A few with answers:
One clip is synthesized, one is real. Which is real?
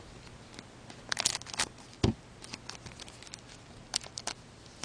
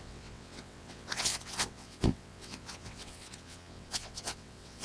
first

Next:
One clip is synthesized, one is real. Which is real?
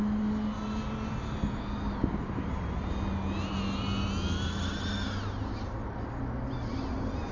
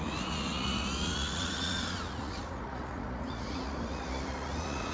first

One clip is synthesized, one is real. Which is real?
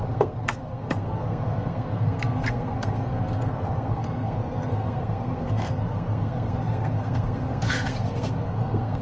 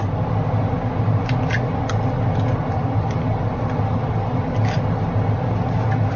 second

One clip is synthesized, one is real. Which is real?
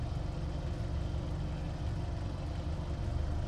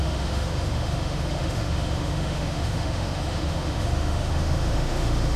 first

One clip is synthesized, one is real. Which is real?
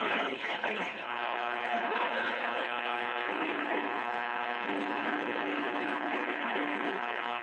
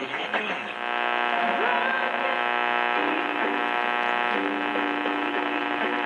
second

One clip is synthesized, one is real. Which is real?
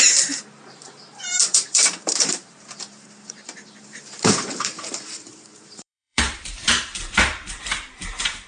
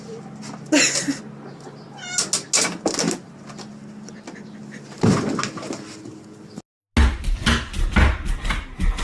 second